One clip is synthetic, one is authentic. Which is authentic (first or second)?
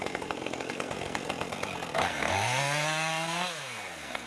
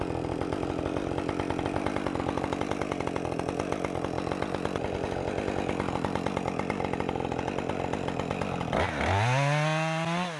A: second